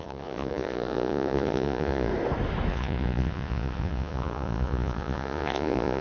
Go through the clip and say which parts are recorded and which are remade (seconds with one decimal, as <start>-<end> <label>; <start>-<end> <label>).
0.0-2.1 remade; 2.1-2.7 recorded; 2.7-6.0 remade